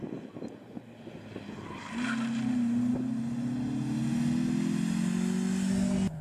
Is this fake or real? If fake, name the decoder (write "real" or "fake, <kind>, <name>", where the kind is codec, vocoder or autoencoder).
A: real